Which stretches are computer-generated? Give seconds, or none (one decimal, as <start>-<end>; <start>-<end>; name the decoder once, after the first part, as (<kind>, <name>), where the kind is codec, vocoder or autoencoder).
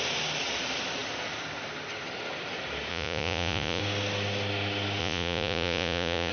2.9-3.8 (vocoder, Vocos); 5.0-6.3